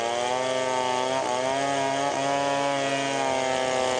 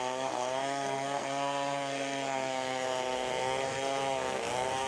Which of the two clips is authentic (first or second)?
first